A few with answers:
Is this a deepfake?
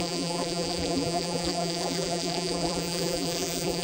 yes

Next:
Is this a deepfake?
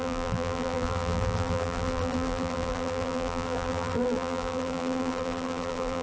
yes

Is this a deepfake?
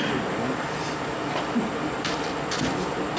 yes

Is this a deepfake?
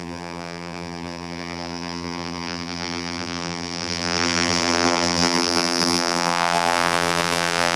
yes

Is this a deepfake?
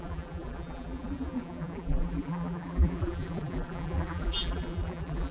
yes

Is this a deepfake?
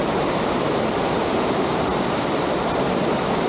yes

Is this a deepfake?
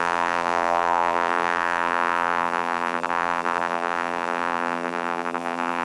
yes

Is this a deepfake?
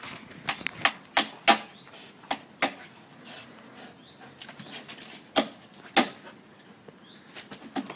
no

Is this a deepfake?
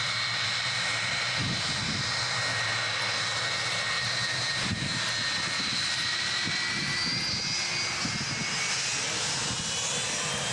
no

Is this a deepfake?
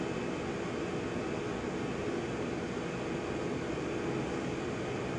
no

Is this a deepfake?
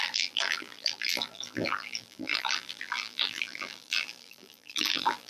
yes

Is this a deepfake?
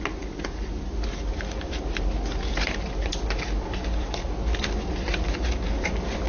no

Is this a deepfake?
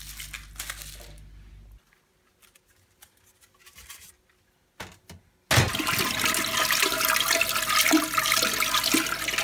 no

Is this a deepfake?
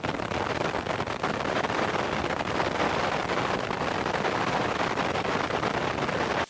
yes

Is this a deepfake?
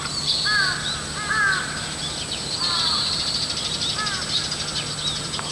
no